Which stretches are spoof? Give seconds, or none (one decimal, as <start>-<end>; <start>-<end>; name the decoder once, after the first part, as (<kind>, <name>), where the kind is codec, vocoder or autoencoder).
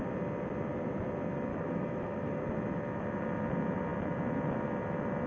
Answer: 1.5-2.4 (autoencoder, DAC-VAE)